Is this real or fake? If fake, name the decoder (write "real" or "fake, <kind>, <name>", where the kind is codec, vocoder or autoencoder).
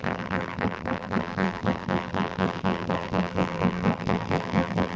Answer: fake, vocoder, BigVGAN v2